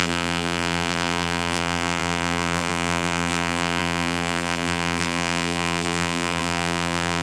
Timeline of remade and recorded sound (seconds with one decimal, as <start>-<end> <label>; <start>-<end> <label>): 0.0-7.2 remade